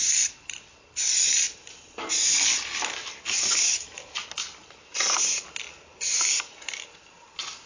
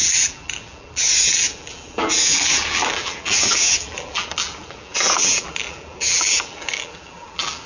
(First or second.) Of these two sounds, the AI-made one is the second